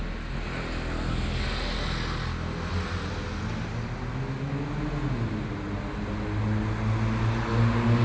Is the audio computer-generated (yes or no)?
no